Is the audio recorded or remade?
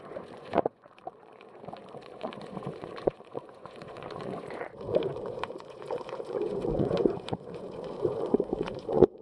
remade